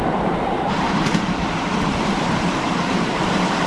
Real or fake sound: fake